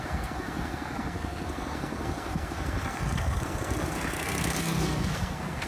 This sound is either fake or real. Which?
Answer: fake